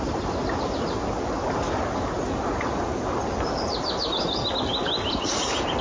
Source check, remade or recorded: recorded